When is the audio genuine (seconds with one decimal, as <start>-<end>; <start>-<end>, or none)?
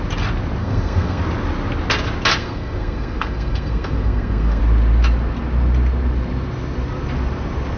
0.0-0.6; 1.2-2.4; 4.6-7.8